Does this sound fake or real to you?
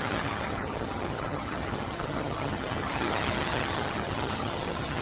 fake